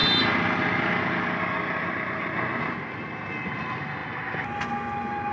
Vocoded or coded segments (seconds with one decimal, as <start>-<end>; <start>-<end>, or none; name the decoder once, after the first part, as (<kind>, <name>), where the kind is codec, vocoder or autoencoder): none